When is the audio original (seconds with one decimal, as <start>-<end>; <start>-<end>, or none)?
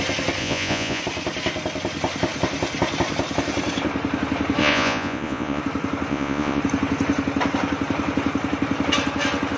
0.0-0.4; 1.0-4.6; 5.6-6.1; 6.6-9.6